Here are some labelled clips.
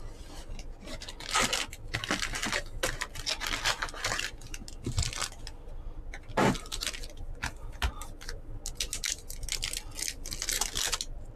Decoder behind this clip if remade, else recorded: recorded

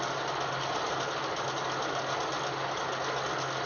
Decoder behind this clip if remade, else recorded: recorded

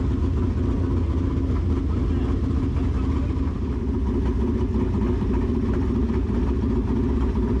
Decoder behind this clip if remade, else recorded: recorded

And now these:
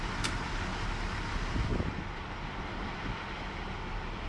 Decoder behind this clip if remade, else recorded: recorded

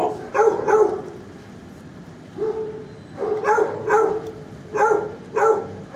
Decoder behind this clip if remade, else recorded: recorded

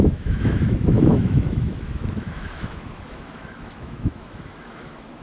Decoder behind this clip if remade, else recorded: remade, autoencoder, DAC-VAE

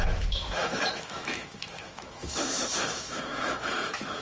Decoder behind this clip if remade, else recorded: remade, autoencoder, DAC-VAE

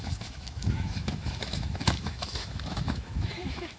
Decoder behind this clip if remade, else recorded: remade, autoencoder, DAC-VAE